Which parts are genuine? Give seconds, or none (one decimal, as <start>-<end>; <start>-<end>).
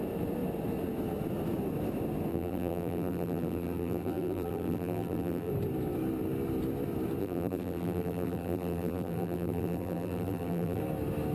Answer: 0.0-2.3; 5.5-7.2; 10.8-11.3